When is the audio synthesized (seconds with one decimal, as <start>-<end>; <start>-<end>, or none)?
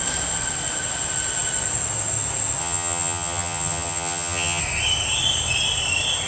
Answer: 2.6-4.6